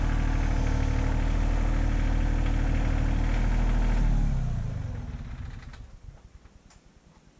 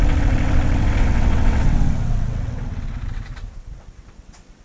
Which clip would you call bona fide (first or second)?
first